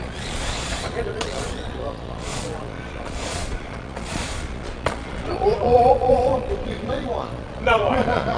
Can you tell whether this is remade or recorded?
remade